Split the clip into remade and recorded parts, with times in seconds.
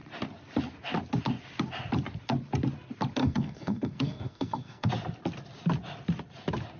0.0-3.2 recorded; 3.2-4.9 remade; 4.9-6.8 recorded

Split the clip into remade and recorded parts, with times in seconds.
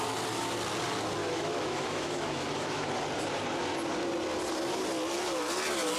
0.0-1.2 recorded; 1.2-2.9 remade; 2.9-6.0 recorded